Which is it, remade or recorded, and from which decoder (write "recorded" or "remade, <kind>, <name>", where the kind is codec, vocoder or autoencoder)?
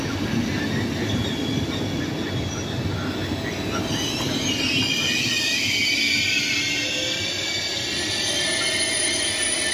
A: recorded